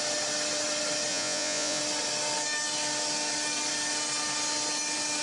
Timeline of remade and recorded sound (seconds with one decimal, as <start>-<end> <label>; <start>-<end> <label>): 0.0-1.1 recorded; 1.1-1.8 remade; 1.8-5.2 recorded